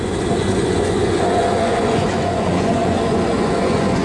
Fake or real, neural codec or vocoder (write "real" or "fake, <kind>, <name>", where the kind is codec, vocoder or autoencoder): fake, vocoder, Vocos